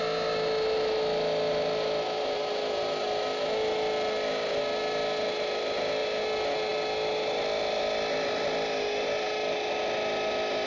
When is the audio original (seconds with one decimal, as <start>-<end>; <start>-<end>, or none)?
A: 0.0-10.7